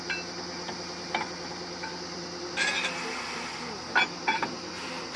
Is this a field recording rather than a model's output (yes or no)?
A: yes